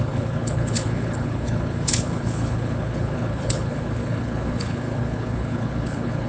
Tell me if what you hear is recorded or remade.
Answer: remade